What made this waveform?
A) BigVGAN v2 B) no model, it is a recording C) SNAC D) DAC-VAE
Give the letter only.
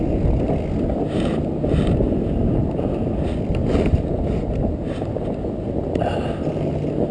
B